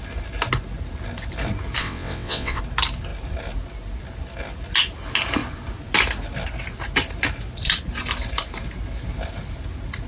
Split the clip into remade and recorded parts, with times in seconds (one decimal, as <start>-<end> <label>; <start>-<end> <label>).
0.0-1.8 recorded; 1.8-2.6 remade; 2.6-10.1 recorded